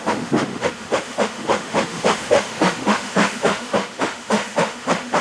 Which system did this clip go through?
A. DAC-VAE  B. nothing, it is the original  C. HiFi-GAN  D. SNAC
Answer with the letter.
A